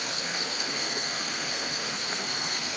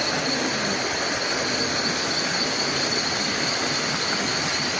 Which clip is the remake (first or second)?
first